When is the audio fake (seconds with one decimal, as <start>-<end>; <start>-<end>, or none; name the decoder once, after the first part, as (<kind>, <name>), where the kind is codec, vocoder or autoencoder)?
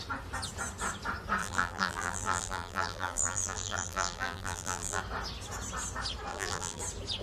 1.4-5.0 (vocoder, BigVGAN v2); 6.3-6.8